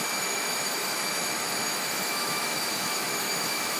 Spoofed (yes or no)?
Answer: yes